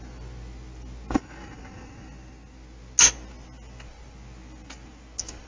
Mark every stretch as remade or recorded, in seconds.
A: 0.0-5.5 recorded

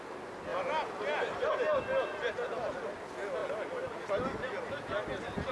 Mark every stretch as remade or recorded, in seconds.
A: 0.0-5.5 recorded